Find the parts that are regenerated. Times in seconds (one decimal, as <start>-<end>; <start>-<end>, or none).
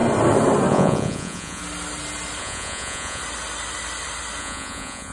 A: 0.7-1.6; 2.4-3.2; 4.4-5.1